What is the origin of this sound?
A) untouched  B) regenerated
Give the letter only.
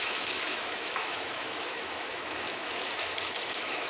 B